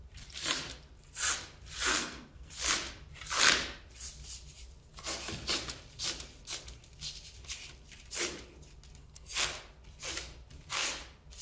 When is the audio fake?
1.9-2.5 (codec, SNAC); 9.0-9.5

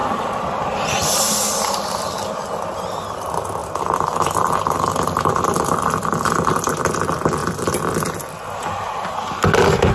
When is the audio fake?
0.0-1.4 (vocoder, BigVGAN v2); 3.6-6.7; 7.4-9.1